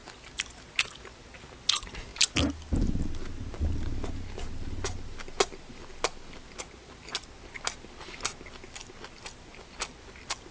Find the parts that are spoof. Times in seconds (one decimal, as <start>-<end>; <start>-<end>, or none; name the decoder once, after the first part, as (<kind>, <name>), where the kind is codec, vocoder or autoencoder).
none